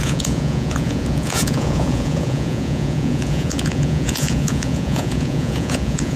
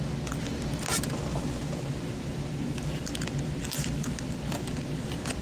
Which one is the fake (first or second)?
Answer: first